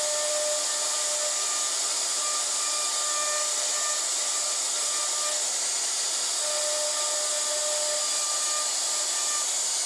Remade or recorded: recorded